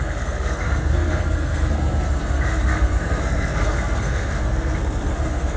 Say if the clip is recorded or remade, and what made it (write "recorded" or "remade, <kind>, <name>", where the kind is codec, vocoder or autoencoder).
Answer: remade, codec, SNAC